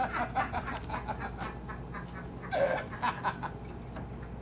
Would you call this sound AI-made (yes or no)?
no